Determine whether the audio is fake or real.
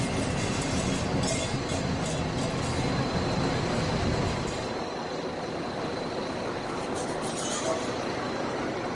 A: real